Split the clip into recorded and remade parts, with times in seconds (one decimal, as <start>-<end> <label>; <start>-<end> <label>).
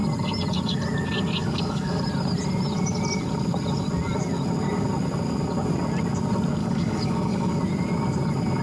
0.0-1.4 recorded; 1.4-2.0 remade; 2.0-6.6 recorded; 6.6-7.6 remade; 7.6-8.6 recorded